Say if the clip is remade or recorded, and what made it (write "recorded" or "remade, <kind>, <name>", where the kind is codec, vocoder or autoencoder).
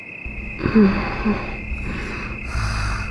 recorded